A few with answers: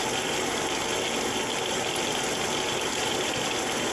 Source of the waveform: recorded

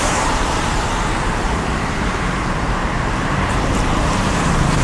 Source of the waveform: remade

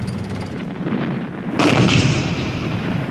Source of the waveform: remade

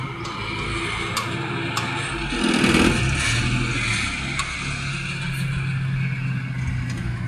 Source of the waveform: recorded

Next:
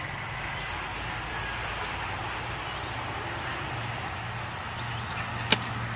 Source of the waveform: recorded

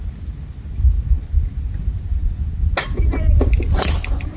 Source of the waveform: recorded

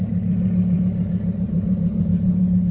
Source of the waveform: remade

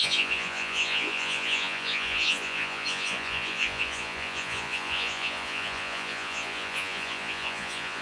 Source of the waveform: remade